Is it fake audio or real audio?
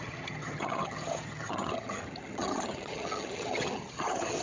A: fake